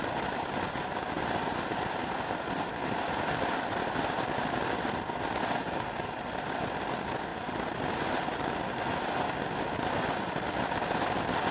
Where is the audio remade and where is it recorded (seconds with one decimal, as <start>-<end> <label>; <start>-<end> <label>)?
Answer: 0.0-11.5 recorded